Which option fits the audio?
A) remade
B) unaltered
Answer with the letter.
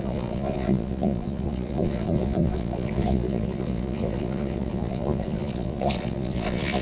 A